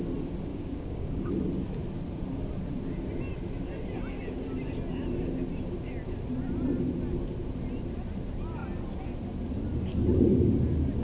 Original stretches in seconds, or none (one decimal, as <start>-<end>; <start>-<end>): 0.0-0.5; 1.3-11.0